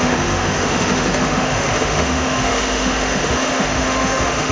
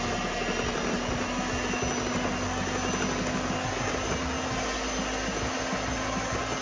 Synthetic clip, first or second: first